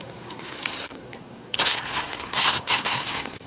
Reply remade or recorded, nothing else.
remade